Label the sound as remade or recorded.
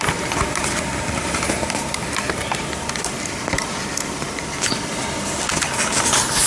recorded